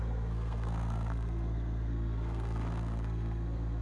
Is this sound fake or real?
fake